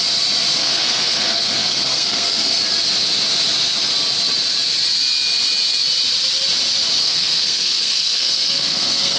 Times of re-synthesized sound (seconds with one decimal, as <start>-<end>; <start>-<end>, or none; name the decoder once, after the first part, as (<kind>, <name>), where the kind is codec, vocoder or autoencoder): 0.6-2.6 (codec, SNAC); 7.0-9.2